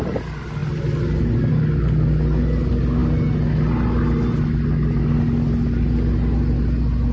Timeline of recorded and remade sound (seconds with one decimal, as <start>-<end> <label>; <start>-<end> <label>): 0.0-7.1 recorded